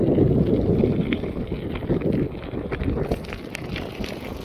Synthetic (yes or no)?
no